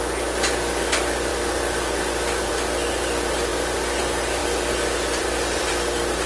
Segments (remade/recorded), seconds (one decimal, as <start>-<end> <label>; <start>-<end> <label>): 0.0-4.4 recorded; 4.4-5.7 remade; 5.7-6.3 recorded